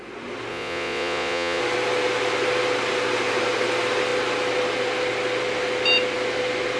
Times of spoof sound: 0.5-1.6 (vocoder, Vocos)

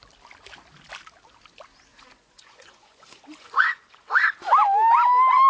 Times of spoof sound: 1.9-4.2 (vocoder, Vocos)

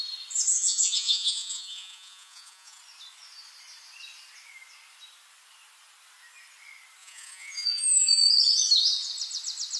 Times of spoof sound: 0.5-2.8 (vocoder, Vocos); 7.0-8.3